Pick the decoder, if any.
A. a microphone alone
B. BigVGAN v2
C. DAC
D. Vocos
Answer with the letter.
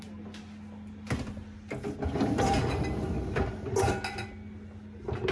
A